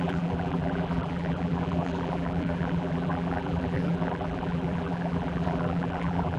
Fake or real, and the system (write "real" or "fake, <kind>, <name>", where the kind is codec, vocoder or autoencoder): fake, vocoder, BigVGAN v2